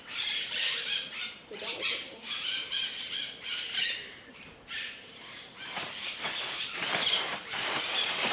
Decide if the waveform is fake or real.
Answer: fake